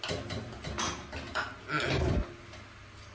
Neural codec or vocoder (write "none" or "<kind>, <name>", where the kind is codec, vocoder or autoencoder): none